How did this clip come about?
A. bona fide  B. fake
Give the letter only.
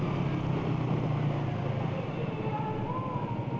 A